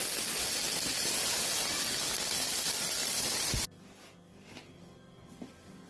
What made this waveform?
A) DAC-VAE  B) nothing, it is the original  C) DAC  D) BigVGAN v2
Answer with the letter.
B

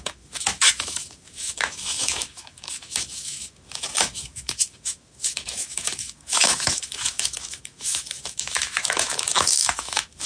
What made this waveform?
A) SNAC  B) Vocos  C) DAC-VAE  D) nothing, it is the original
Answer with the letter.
C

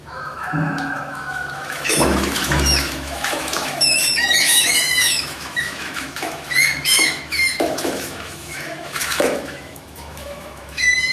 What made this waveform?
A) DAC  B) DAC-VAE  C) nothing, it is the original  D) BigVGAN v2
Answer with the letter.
B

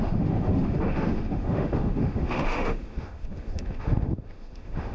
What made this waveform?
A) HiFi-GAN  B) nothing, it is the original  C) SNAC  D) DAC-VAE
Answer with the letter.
D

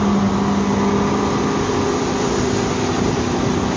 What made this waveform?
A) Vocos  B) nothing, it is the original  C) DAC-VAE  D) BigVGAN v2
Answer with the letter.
B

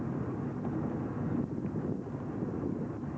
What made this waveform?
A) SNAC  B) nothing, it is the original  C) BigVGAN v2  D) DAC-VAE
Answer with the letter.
B